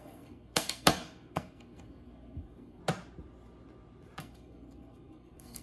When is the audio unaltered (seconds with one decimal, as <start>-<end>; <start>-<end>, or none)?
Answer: 2.8-4.2

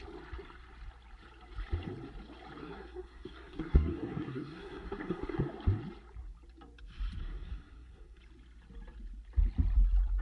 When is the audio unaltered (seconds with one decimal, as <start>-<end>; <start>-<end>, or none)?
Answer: 0.0-2.6; 5.4-7.2; 8.2-10.2

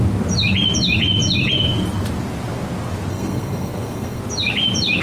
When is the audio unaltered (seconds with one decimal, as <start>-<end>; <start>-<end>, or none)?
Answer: 0.0-3.1; 4.2-5.0

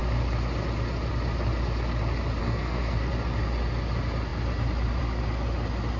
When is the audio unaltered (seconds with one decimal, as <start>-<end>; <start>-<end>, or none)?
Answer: 0.0-2.4; 3.1-6.0

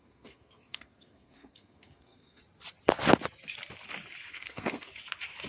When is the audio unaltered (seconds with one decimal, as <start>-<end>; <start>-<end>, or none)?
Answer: 2.4-4.3; 4.9-5.5

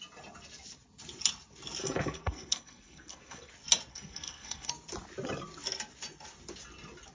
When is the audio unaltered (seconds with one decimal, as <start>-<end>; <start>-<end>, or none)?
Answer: 0.0-1.8; 3.5-3.9; 4.7-7.1